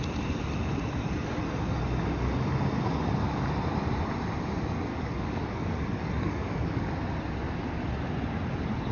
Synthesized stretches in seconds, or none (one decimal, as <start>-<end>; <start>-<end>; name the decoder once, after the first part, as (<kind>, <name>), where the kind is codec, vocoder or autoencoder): 4.9-6.9 (codec, DAC)